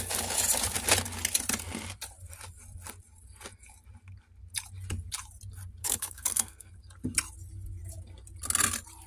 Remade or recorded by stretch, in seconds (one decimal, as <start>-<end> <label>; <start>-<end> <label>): 0.0-5.8 recorded; 5.8-6.7 remade; 6.7-9.1 recorded